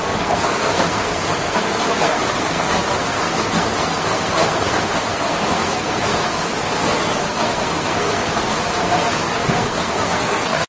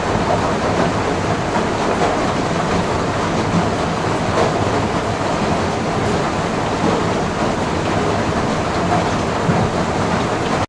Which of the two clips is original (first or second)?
second